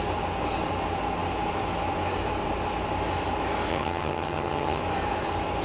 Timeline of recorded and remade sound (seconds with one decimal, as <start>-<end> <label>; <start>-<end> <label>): 0.0-3.7 recorded; 3.7-4.8 remade; 4.8-5.6 recorded